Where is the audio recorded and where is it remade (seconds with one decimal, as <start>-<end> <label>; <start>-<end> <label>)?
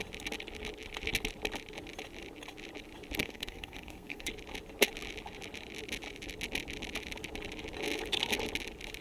0.0-3.2 recorded; 3.2-4.3 remade; 4.3-9.0 recorded